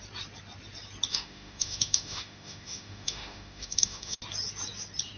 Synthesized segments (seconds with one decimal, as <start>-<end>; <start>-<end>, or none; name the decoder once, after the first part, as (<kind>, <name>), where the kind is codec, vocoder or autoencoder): 1.1-4.2 (autoencoder, DAC-VAE)